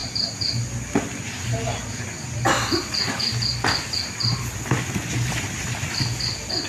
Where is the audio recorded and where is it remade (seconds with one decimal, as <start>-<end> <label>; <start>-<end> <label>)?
0.0-6.7 recorded